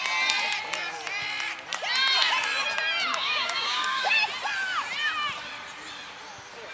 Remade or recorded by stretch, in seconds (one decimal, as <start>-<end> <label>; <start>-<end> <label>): 0.0-3.1 recorded; 3.1-4.1 remade; 4.1-6.7 recorded